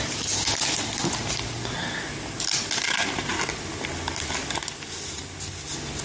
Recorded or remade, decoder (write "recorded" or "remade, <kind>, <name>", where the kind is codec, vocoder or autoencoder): recorded